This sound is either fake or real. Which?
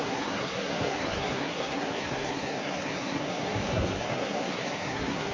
fake